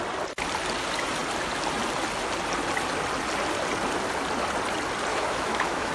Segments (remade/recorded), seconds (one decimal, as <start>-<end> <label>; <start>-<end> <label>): 0.0-5.1 recorded; 5.1-5.9 remade